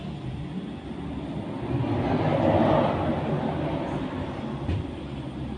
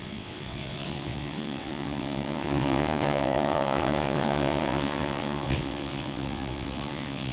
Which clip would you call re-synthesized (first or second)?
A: second